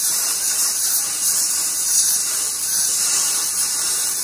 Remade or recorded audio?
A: remade